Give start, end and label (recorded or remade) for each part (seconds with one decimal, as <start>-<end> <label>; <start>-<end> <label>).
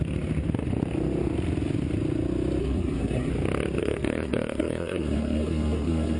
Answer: 0.0-2.6 recorded; 2.6-3.3 remade; 3.3-3.8 recorded; 3.8-6.2 remade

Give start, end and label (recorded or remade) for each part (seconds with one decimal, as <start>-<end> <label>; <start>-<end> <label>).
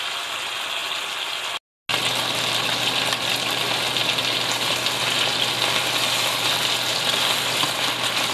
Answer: 0.0-8.3 recorded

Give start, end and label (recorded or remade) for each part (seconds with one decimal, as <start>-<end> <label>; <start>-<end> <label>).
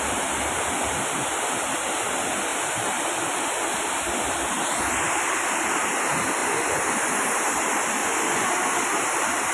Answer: 0.0-6.4 recorded; 6.4-7.2 remade; 7.2-8.0 recorded; 8.0-8.5 remade; 8.5-9.5 recorded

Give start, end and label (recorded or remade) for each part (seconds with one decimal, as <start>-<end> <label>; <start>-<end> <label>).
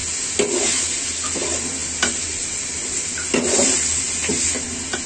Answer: 0.0-5.1 recorded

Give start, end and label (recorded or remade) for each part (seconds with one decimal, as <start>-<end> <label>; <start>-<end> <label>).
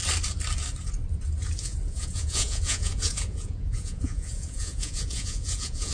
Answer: 0.0-1.6 recorded; 1.6-5.9 remade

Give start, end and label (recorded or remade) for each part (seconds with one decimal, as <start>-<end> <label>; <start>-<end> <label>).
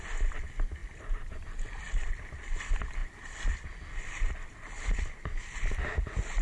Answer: 0.0-6.4 recorded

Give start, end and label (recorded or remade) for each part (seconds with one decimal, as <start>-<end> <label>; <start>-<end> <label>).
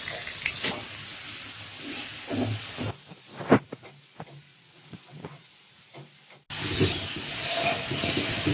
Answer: 0.0-4.5 recorded; 4.5-5.5 remade; 5.5-8.5 recorded